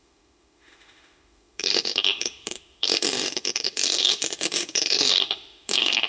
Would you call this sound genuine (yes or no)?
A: no